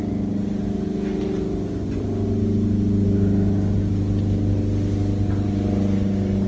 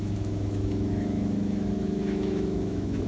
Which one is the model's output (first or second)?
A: second